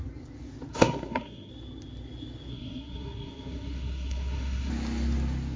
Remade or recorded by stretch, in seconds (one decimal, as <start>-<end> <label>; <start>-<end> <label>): 0.0-0.7 recorded; 0.7-1.5 remade; 1.5-2.5 recorded; 2.5-4.7 remade; 4.7-5.6 recorded